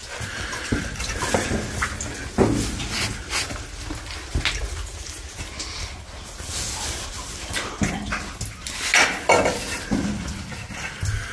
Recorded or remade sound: recorded